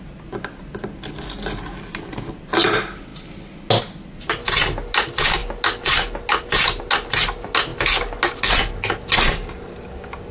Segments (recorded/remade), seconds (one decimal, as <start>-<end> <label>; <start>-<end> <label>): 0.0-10.3 recorded